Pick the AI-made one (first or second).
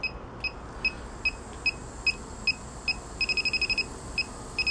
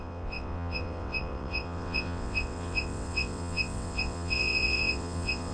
second